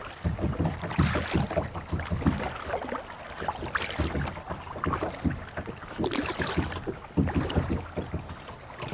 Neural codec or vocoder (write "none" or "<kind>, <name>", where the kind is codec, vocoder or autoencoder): none